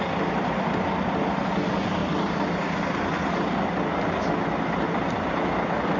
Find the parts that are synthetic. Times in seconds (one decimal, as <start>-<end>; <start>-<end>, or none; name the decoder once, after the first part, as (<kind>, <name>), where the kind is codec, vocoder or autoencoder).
2.0-3.9 (vocoder, BigVGAN v2)